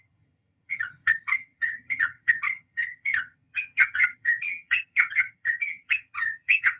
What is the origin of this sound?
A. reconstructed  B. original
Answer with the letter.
A